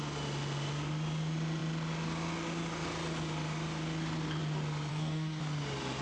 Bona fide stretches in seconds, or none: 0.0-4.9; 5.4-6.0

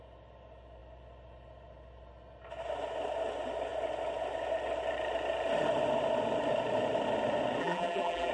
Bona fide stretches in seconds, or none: 0.0-7.6

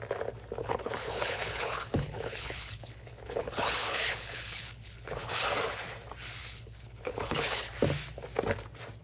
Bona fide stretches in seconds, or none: 0.0-0.6; 5.4-6.4; 7.7-9.0

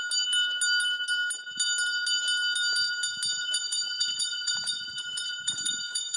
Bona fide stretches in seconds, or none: 0.0-3.4

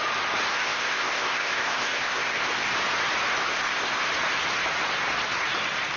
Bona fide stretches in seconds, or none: 0.0-0.5; 2.7-3.4; 4.0-6.0

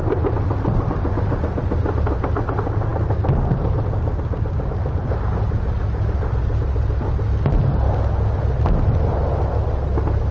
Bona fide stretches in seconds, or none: 0.0-10.3

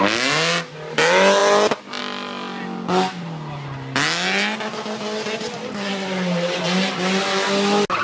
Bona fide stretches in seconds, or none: 0.0-8.0

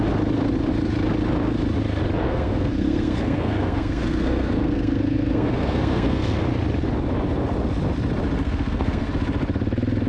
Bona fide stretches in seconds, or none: 0.0-2.2; 6.4-8.4; 9.1-10.1